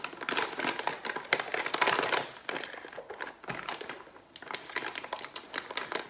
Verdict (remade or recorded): recorded